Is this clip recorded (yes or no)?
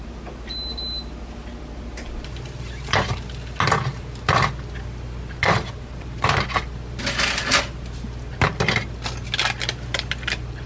yes